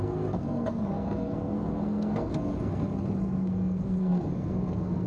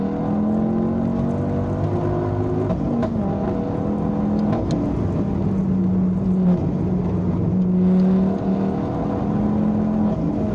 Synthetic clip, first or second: first